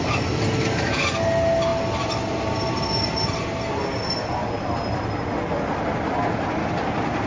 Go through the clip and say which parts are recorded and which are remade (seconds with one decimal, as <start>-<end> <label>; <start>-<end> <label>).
0.0-7.3 recorded

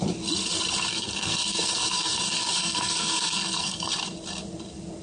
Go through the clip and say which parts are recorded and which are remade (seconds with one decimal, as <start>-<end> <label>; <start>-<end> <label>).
0.0-0.9 recorded; 0.9-3.9 remade; 3.9-5.0 recorded

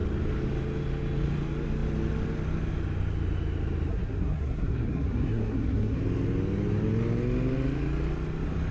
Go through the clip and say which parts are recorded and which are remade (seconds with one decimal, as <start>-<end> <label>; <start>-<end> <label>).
0.0-3.9 recorded; 3.9-6.0 remade; 6.0-8.7 recorded

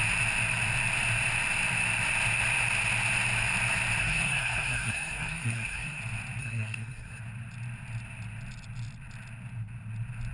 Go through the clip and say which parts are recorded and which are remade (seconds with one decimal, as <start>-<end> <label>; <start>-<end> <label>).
0.0-4.0 recorded; 4.0-6.0 remade; 6.0-6.4 recorded; 6.4-7.2 remade; 7.2-10.3 recorded

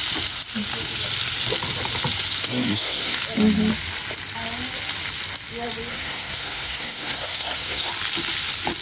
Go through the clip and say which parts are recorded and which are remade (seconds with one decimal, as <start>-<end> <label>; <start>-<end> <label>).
0.0-2.4 recorded; 2.4-3.2 remade; 3.2-5.9 recorded; 5.9-7.9 remade; 7.9-8.8 recorded

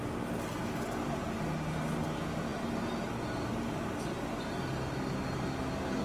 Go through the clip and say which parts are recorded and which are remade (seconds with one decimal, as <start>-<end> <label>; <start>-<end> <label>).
0.0-6.0 recorded

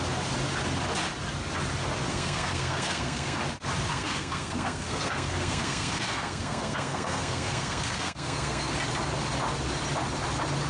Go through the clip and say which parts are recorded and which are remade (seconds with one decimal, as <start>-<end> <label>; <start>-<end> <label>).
0.0-2.1 recorded; 2.1-3.4 remade; 3.4-3.9 recorded; 3.9-8.7 remade; 8.7-10.7 recorded